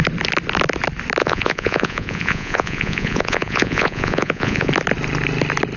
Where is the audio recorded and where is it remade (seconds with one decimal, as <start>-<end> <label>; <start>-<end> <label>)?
0.0-1.2 recorded; 1.2-4.7 remade; 4.7-5.8 recorded